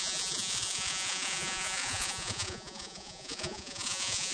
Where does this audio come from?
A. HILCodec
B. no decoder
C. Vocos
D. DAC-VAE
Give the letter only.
C